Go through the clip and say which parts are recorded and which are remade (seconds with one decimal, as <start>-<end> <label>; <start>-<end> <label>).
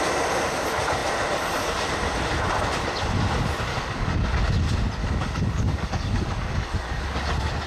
0.0-3.7 recorded; 3.7-4.4 remade; 4.4-5.0 recorded; 5.0-7.3 remade; 7.3-7.7 recorded